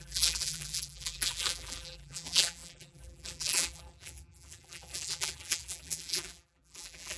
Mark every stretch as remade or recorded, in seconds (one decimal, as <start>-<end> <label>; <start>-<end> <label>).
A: 0.0-7.2 remade